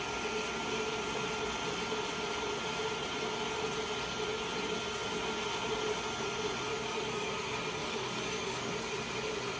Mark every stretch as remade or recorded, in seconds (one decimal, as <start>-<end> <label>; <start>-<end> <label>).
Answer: 0.0-6.7 recorded; 6.7-7.3 remade; 7.3-7.8 recorded; 7.8-8.7 remade; 8.7-9.6 recorded